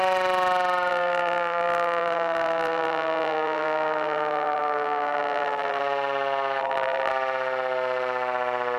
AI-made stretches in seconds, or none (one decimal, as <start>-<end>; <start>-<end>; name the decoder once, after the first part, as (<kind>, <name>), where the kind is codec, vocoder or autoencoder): 0.9-5.8 (vocoder, BigVGAN v2); 6.6-7.1